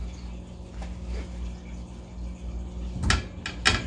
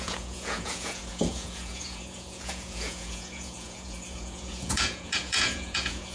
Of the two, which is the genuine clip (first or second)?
first